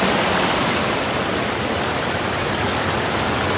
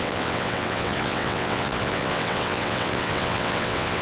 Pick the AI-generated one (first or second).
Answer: second